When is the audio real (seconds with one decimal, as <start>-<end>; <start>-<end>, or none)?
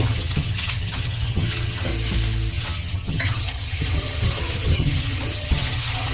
1.9-2.5